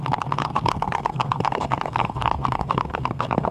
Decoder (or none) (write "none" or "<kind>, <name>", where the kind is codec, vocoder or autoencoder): codec, SNAC